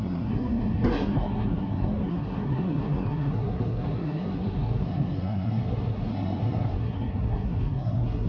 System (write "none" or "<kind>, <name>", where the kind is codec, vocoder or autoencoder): codec, SNAC